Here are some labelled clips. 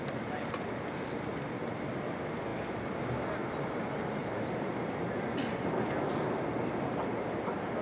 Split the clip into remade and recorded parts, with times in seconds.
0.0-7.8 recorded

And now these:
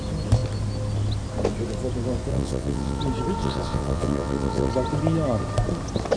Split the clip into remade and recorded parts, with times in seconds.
0.0-2.3 recorded; 2.3-3.0 remade; 3.0-3.4 recorded; 3.4-4.7 remade; 4.7-6.2 recorded

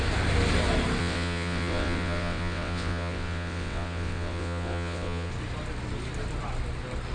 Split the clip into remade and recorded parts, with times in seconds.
0.0-1.0 recorded; 1.0-5.3 remade; 5.3-7.1 recorded

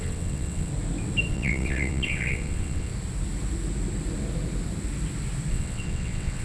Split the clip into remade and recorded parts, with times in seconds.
0.0-0.7 remade; 0.7-1.3 recorded; 1.3-2.9 remade; 2.9-5.5 recorded; 5.5-6.4 remade

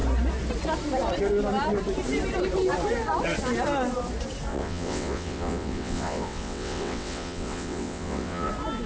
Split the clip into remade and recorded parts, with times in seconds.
0.0-4.5 recorded; 4.5-8.5 remade; 8.5-8.9 recorded